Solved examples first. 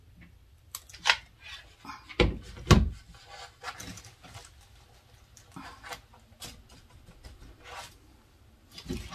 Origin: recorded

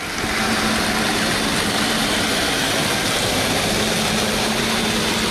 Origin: recorded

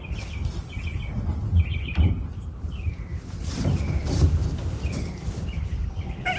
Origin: recorded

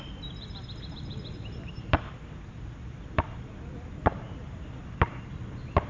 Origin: remade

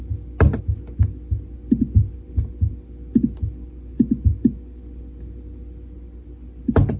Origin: recorded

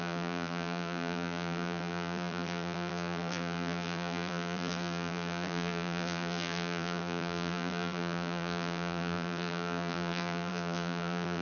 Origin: remade